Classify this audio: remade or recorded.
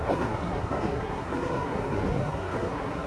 remade